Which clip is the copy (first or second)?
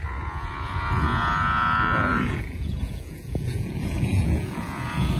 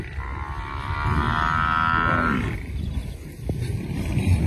first